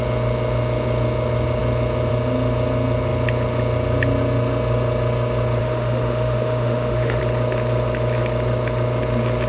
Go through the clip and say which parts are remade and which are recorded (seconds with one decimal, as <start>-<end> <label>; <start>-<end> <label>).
0.0-5.6 recorded; 5.6-7.2 remade; 7.2-9.5 recorded